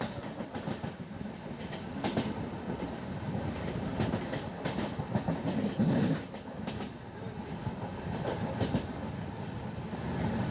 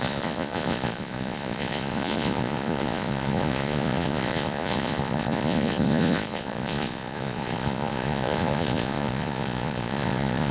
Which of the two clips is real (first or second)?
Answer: first